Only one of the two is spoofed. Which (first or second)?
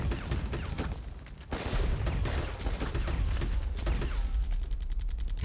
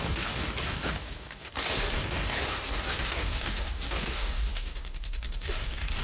second